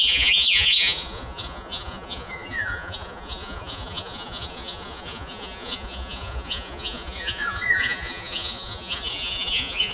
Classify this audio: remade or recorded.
remade